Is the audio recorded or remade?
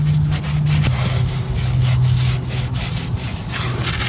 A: recorded